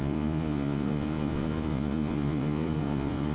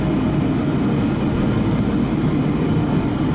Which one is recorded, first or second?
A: second